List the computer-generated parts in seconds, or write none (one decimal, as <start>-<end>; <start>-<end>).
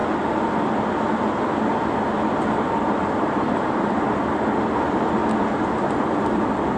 none